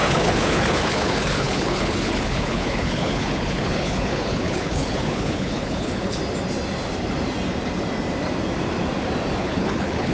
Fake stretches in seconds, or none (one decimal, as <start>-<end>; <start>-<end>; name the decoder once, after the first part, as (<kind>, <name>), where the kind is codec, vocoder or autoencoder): 0.0-6.2 (codec, HILCodec); 9.4-10.1